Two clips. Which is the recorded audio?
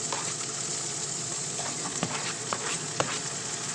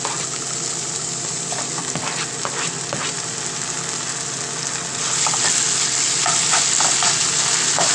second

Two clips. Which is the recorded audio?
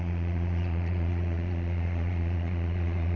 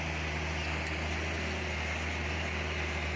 second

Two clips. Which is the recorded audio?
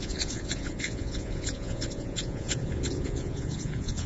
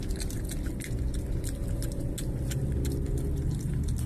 second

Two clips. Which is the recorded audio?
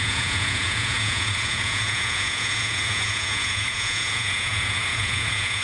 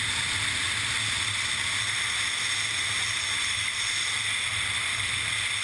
second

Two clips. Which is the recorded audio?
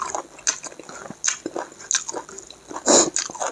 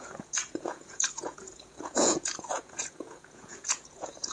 first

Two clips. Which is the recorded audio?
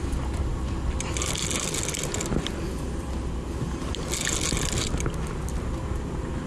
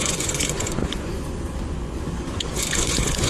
first